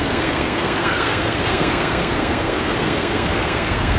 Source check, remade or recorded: remade